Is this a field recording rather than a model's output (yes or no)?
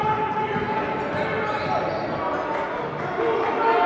yes